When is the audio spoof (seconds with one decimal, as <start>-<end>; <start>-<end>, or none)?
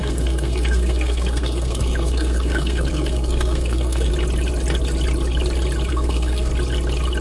0.0-4.1; 5.9-6.5